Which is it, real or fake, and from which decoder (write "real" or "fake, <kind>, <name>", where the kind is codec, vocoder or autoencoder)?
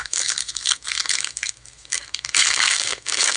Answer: fake, codec, SNAC